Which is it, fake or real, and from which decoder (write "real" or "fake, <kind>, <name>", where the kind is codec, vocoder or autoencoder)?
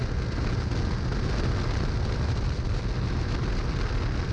real